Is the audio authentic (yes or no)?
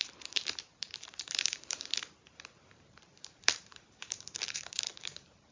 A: no